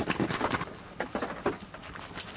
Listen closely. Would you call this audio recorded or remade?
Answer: recorded